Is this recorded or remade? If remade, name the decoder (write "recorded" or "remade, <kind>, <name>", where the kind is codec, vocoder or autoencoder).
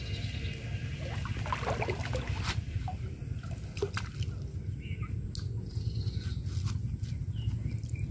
recorded